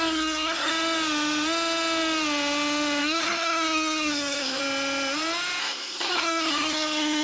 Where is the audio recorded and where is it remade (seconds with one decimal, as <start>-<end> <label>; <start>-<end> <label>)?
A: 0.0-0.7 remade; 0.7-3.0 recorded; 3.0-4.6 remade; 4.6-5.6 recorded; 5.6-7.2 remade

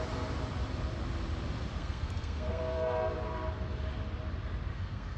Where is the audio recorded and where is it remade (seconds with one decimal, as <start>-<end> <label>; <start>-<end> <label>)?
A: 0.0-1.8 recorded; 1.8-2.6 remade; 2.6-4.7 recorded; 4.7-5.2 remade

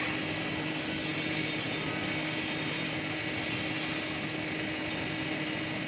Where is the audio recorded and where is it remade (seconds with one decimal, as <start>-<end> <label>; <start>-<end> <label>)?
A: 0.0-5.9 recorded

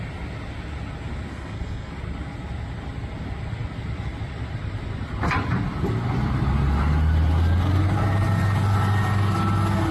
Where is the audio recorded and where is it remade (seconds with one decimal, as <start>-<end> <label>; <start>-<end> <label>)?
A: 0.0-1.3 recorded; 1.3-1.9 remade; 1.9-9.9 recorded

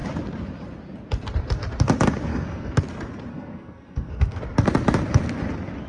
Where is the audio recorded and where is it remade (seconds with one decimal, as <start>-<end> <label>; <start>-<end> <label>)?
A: 0.0-2.3 recorded; 2.3-2.8 remade; 2.8-3.3 recorded; 3.3-4.4 remade; 4.4-5.9 recorded

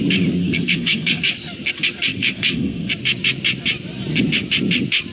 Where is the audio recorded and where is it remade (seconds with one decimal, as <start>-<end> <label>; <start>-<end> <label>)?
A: 0.0-0.4 recorded; 0.4-1.2 remade; 1.2-2.1 recorded; 2.1-2.9 remade; 2.9-5.1 recorded